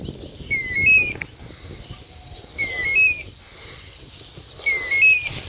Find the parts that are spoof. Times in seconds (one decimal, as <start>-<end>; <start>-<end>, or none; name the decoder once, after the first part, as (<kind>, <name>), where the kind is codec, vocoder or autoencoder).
none